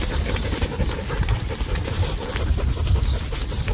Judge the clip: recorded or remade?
remade